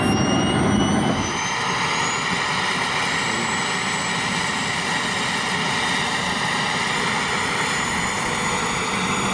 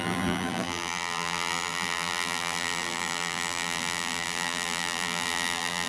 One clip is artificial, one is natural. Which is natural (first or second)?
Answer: first